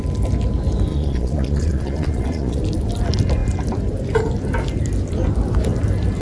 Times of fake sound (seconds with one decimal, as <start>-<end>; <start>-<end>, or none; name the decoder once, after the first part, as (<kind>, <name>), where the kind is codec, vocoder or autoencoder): 0.9-2.6 (vocoder, Vocos)